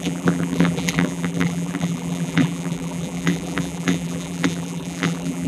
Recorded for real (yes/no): no